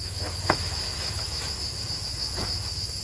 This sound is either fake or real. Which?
fake